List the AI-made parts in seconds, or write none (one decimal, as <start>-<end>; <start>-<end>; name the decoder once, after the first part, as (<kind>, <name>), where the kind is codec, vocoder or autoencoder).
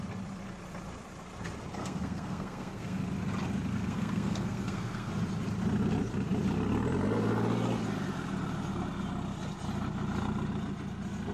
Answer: 1.8-3.0 (codec, SNAC); 3.7-5.1